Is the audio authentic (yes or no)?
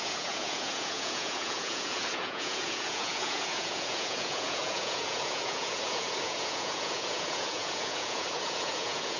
no